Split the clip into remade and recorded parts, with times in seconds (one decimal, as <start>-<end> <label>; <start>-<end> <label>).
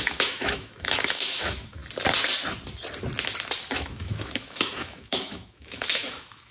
0.0-1.8 remade; 1.8-3.7 recorded; 3.7-6.5 remade